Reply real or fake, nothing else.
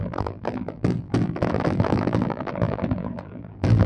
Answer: fake